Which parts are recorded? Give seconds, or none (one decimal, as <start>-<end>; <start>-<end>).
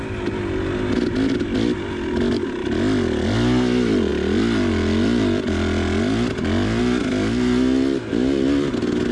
0.0-9.1